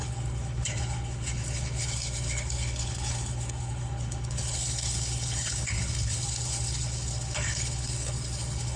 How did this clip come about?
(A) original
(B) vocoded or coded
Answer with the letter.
B